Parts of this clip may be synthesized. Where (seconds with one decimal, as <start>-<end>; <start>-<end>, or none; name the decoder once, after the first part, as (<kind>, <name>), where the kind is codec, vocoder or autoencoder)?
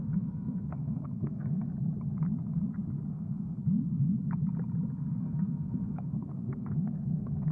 0.0-1.7 (codec, SNAC); 3.1-3.6; 5.2-7.5